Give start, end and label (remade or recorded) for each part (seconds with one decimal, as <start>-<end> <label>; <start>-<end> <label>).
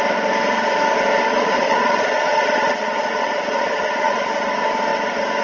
0.0-1.3 recorded; 1.3-4.5 remade; 4.5-5.4 recorded